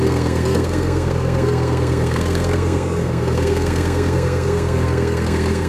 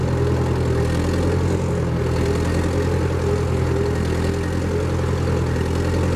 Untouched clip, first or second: second